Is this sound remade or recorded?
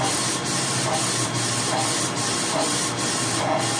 recorded